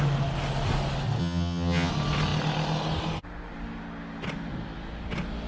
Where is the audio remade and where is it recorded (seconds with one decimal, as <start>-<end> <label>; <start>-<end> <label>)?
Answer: 0.0-1.2 recorded; 1.2-1.9 remade; 1.9-5.5 recorded